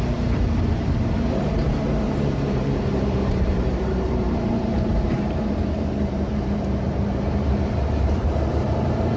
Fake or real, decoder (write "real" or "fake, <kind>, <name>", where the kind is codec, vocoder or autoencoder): fake, vocoder, BigVGAN v2